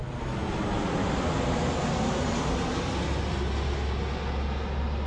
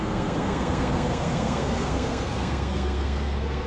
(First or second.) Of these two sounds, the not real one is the second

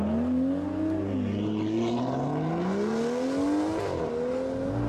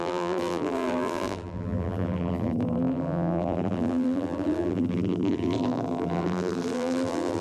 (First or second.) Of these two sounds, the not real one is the second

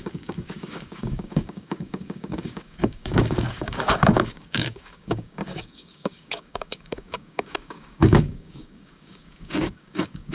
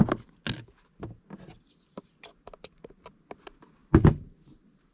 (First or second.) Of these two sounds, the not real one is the first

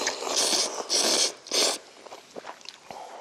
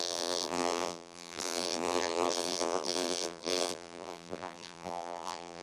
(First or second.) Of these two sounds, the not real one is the second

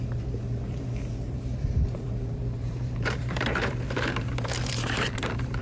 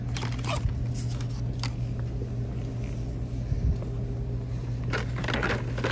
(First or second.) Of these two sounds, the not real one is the first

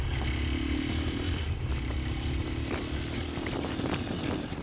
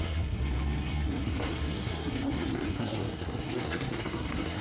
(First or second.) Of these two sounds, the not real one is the second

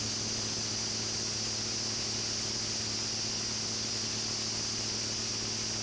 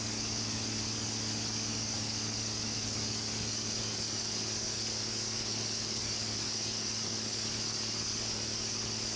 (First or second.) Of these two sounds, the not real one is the second